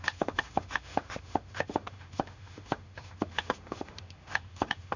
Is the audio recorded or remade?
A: remade